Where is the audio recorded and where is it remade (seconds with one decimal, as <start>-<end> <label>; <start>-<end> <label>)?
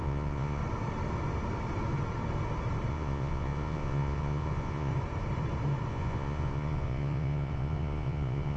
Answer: 0.0-0.6 remade; 0.6-2.9 recorded; 2.9-4.9 remade; 4.9-5.9 recorded; 5.9-8.6 remade